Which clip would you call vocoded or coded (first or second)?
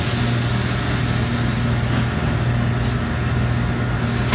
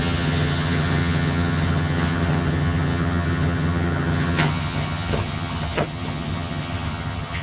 second